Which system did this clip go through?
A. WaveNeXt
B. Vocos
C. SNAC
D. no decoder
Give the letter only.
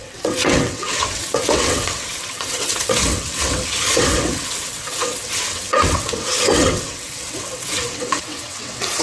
A